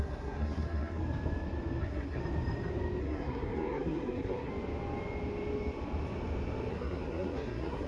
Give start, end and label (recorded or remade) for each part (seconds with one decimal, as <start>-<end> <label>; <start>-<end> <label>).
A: 0.0-1.0 remade; 1.0-1.8 recorded; 1.8-2.2 remade; 2.2-3.0 recorded; 3.0-4.5 remade; 4.5-6.7 recorded; 6.7-7.9 remade